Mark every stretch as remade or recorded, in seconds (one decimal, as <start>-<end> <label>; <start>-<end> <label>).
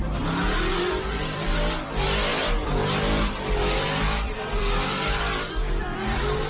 0.0-0.7 recorded; 0.7-6.5 remade